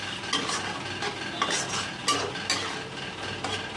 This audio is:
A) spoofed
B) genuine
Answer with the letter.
B